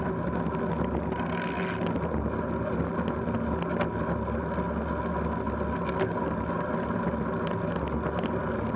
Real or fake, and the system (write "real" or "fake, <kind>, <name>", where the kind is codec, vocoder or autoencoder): real